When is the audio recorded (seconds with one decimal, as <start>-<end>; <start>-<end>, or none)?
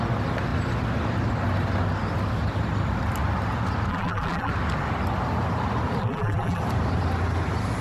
0.0-3.9; 4.5-6.0; 6.6-7.8